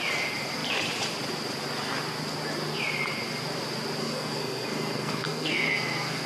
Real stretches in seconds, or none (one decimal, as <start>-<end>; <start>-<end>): 0.0-4.0